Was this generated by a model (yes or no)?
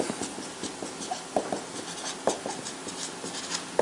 no